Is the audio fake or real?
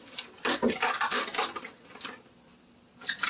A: real